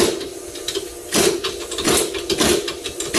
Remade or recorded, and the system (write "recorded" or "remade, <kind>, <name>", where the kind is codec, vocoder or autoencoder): recorded